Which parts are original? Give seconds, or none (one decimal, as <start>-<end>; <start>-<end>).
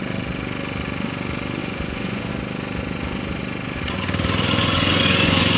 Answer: 0.0-1.6; 2.3-4.6